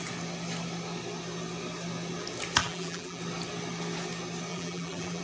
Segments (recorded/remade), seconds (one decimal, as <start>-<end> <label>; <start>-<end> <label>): 0.0-2.6 recorded; 2.6-3.2 remade; 3.2-4.5 recorded; 4.5-5.2 remade